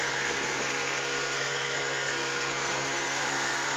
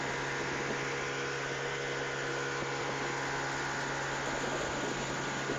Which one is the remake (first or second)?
first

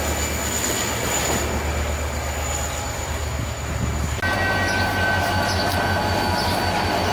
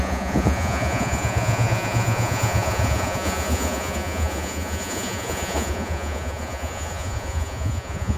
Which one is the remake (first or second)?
second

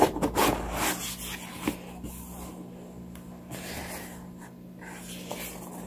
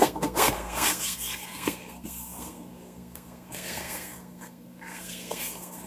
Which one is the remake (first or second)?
second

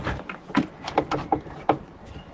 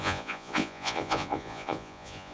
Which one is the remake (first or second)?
second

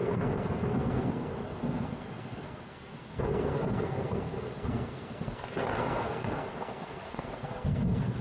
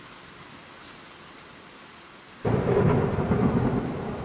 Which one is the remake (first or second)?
first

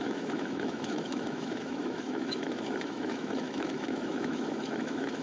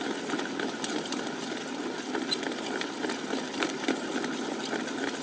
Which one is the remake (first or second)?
first